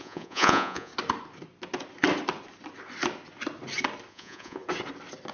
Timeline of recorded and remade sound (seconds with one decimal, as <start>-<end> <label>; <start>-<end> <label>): 0.0-0.9 remade; 0.9-4.1 recorded; 4.1-4.6 remade; 4.6-5.3 recorded